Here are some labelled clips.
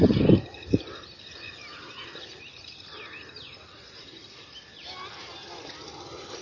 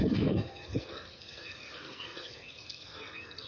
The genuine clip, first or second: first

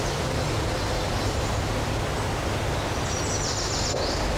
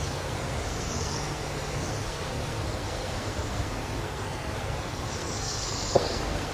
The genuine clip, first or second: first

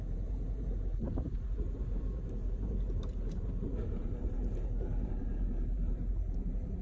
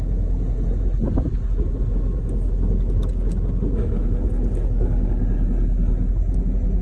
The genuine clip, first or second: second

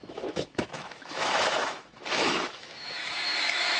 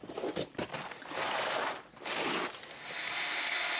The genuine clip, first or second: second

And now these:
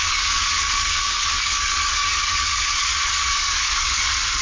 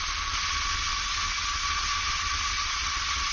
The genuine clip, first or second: second